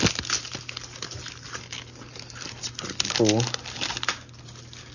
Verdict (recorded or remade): recorded